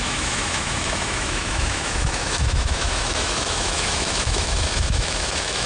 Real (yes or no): no